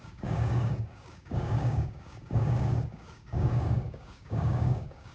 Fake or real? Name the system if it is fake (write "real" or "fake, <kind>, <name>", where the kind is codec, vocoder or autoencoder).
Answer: fake, codec, DAC